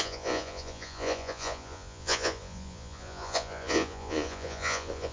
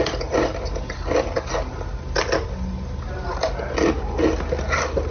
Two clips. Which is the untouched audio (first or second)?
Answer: second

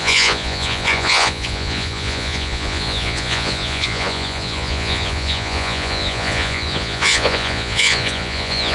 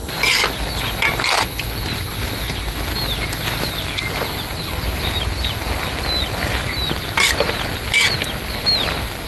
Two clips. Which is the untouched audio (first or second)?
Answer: second